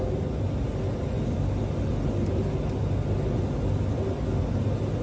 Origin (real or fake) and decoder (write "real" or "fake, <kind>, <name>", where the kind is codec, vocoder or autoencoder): real